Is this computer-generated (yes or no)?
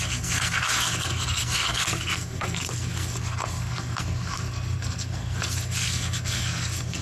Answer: yes